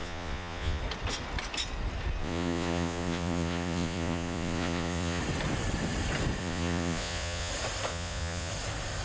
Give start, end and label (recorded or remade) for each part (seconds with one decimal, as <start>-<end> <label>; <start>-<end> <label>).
0.0-0.8 remade; 0.8-2.2 recorded; 2.2-5.2 remade; 5.2-6.4 recorded; 6.4-7.5 remade; 7.5-7.9 recorded; 7.9-8.5 remade; 8.5-9.0 recorded